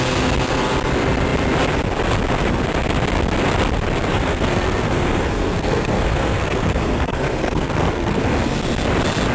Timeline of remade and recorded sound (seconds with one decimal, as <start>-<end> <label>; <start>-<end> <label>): 0.0-4.1 recorded; 4.1-8.3 remade; 8.3-9.3 recorded